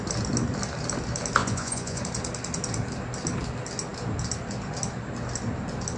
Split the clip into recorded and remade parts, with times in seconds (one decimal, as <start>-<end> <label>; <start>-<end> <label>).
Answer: 0.0-1.4 recorded; 1.4-2.0 remade; 2.0-6.0 recorded